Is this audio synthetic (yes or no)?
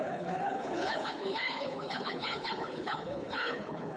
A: yes